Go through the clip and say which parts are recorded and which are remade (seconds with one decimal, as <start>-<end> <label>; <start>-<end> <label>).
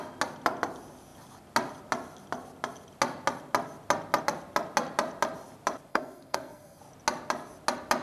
0.0-5.9 recorded; 5.9-6.8 remade; 6.8-8.0 recorded